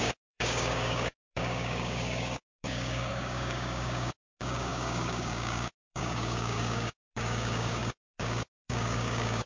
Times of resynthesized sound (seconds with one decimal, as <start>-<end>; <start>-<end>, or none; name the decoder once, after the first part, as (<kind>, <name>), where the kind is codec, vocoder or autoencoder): 0.0-9.5 (codec, DAC)